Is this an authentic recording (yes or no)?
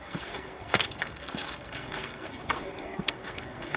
no